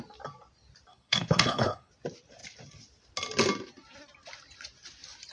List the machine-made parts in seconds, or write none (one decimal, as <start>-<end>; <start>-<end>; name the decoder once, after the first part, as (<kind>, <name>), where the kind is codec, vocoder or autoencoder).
0.9-1.9 (codec, HILCodec)